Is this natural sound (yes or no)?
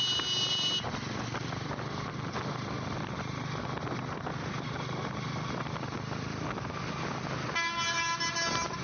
yes